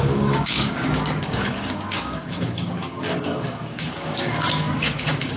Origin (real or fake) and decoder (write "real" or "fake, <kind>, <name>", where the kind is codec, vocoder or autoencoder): fake, codec, DAC